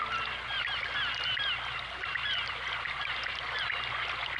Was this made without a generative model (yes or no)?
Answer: yes